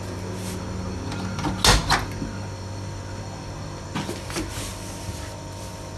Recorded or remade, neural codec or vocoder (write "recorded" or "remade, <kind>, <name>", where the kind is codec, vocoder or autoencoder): recorded